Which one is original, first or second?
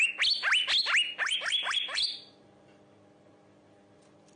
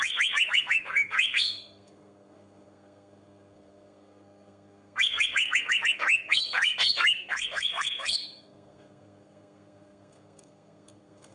first